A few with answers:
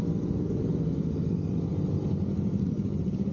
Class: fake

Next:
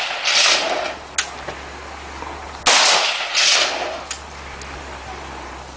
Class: real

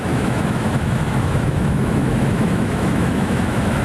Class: fake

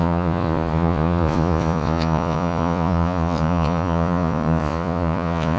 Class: fake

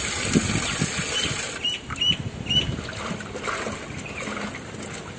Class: real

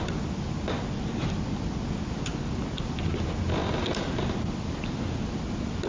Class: real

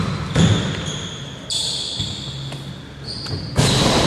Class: real